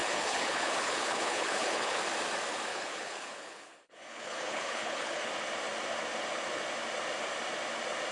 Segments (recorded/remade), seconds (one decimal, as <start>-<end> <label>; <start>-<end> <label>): 0.0-2.0 remade; 2.0-2.7 recorded; 2.7-5.3 remade; 5.3-8.1 recorded